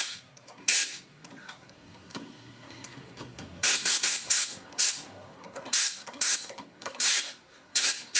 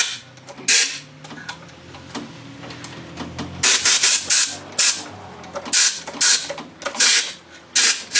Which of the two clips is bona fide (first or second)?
second